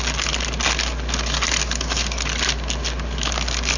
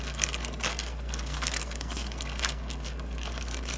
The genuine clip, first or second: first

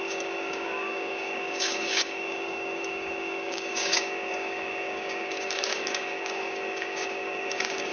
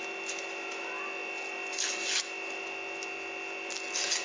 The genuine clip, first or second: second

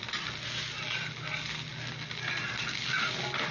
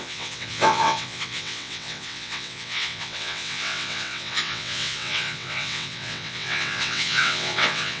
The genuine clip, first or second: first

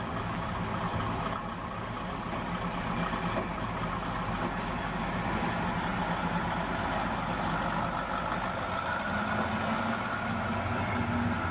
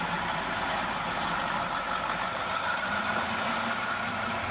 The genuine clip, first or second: first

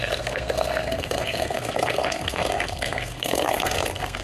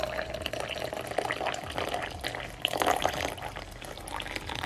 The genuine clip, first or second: second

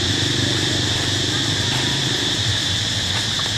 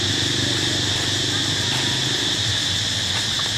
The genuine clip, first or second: second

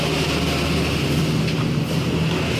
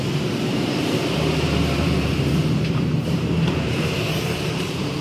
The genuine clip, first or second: first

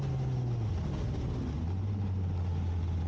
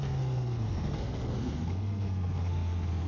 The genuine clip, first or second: first